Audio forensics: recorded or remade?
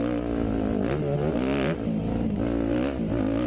recorded